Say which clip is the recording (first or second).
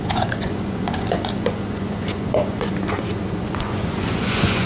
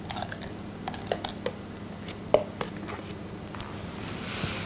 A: second